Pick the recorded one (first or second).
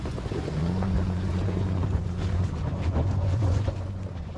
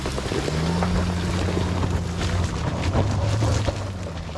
second